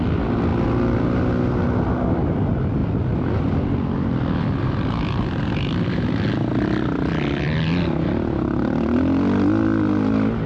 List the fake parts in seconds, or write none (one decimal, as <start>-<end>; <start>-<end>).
none